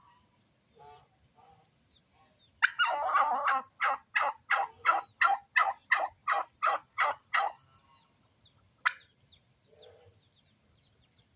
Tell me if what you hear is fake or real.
real